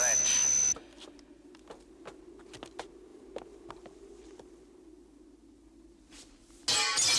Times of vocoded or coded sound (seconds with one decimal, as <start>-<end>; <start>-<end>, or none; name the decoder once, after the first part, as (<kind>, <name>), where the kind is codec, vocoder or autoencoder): none